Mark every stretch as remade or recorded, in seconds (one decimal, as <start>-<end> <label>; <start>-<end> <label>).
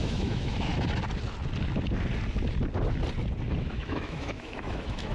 0.0-0.7 remade; 0.7-3.6 recorded; 3.6-5.1 remade